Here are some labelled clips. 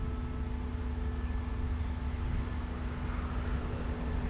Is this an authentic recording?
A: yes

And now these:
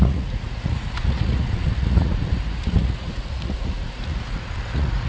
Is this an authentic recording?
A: no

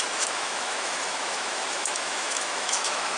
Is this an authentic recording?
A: no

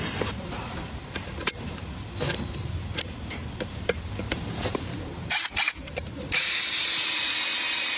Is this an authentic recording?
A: no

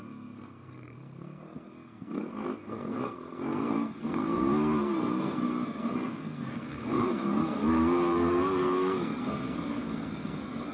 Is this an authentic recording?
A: no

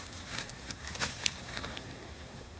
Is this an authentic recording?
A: no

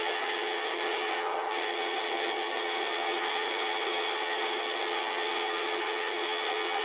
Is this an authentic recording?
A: no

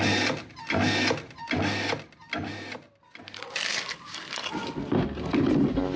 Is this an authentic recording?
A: yes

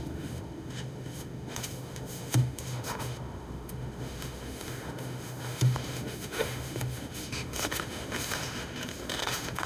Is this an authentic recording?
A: no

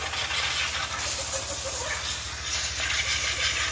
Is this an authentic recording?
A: yes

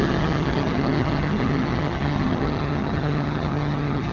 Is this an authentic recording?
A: no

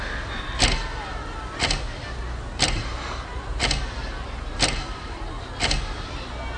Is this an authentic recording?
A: yes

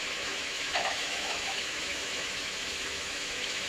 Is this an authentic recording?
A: no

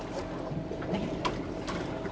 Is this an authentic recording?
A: yes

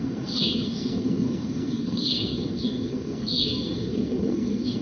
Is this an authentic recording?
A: no